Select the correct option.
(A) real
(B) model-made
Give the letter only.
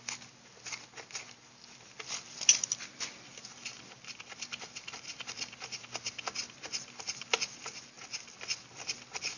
A